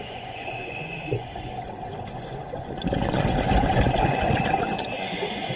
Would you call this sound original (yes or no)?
no